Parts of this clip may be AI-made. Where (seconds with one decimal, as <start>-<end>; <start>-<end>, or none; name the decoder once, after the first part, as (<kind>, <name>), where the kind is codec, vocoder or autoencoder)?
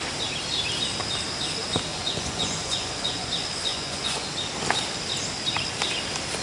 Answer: 1.9-3.3 (vocoder, Vocos); 3.7-4.3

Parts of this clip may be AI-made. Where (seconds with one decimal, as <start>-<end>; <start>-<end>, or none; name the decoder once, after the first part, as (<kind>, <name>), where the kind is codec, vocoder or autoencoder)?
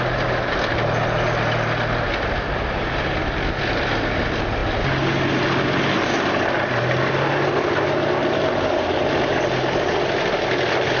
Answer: none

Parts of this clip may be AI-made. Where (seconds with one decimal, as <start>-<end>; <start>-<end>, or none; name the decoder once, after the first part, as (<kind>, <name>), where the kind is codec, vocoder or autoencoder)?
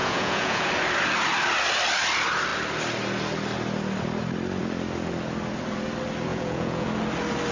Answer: 0.0-0.7 (vocoder, Vocos); 6.3-6.9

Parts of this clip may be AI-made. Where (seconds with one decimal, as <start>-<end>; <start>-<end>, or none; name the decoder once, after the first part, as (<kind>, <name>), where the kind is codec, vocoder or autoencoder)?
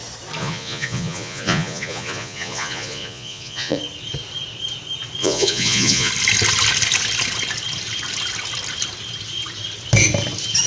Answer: 0.4-3.8 (vocoder, Vocos); 5.2-6.1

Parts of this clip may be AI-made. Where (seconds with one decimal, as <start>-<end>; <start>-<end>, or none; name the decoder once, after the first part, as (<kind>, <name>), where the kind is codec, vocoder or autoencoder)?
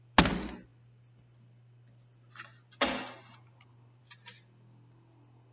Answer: none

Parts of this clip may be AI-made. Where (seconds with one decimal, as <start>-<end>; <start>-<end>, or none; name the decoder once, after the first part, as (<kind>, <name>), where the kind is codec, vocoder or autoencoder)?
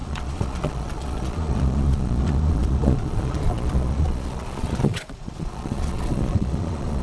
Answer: 0.0-7.0 (vocoder, Vocos)